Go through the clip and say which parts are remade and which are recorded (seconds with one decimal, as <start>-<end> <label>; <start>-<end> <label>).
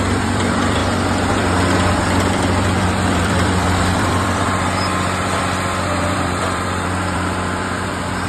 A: 0.0-0.8 remade; 0.8-1.3 recorded; 1.3-8.3 remade